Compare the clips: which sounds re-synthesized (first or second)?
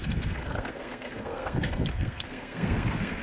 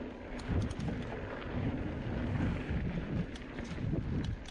first